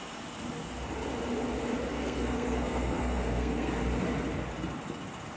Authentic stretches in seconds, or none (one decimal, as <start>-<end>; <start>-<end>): 0.0-1.9; 3.7-5.4